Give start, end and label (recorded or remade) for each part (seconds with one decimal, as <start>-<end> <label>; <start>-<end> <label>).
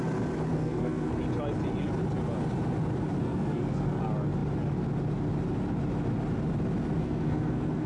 0.0-0.5 recorded; 0.5-1.1 remade; 1.1-3.2 recorded; 3.2-4.0 remade; 4.0-7.0 recorded; 7.0-7.9 remade